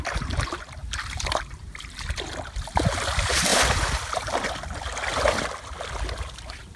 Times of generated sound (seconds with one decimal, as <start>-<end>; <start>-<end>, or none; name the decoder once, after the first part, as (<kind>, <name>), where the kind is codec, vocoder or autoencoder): 0.8-1.6 (vocoder, BigVGAN v2); 3.5-4.5